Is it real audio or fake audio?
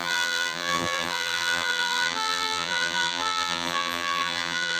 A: fake